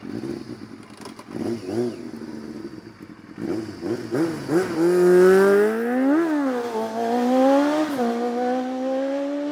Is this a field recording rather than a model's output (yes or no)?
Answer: yes